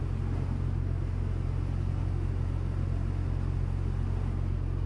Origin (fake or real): real